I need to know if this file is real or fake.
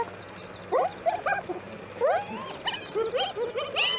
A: real